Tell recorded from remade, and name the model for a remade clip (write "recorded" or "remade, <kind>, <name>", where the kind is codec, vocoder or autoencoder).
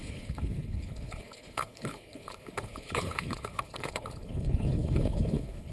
remade, codec, HILCodec